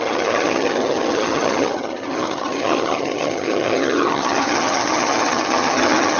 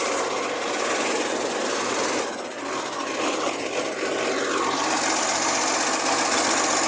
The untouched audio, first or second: second